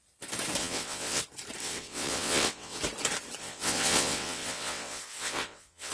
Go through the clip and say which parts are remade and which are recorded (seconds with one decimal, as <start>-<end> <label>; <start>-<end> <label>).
0.0-0.6 recorded; 0.6-1.2 remade; 1.2-1.6 recorded; 1.6-2.8 remade; 2.8-3.4 recorded; 3.4-5.9 remade